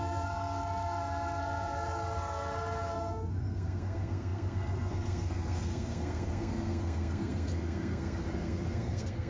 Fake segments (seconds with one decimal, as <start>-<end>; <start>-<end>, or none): 0.0-9.3